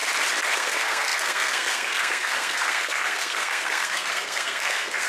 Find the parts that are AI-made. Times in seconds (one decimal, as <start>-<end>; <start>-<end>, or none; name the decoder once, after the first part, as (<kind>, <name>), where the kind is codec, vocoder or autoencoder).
0.5-5.1 (codec, SNAC)